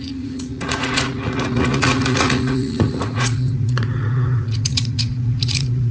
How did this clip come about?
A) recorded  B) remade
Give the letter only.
B